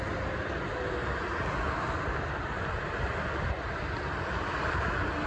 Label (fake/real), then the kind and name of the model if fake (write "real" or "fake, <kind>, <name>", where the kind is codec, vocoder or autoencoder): real